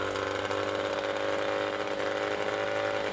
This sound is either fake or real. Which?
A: real